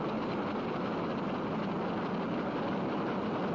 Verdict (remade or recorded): recorded